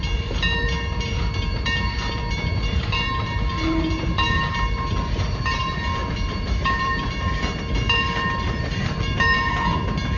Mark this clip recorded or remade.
remade